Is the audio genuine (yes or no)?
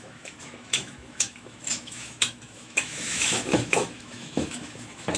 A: no